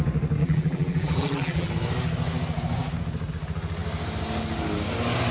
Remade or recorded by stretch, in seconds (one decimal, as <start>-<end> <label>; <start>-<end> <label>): 0.0-0.4 recorded; 0.4-1.7 remade; 1.7-5.3 recorded